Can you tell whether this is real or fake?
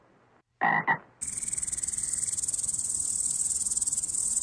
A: real